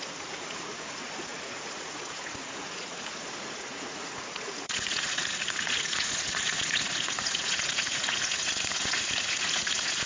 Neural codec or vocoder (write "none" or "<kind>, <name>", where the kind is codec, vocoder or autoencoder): vocoder, Vocos